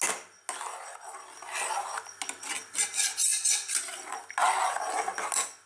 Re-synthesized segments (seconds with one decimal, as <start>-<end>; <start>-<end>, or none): none